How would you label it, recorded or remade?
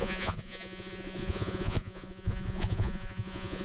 remade